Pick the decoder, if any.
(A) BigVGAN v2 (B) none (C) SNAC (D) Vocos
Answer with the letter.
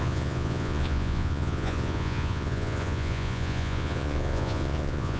D